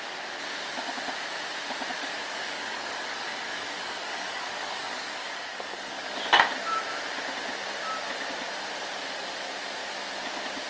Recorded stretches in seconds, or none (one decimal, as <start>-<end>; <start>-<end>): 0.0-2.0; 6.2-10.7